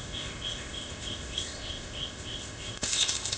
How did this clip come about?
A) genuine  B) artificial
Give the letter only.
B